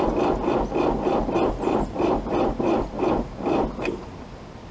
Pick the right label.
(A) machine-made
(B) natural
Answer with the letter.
B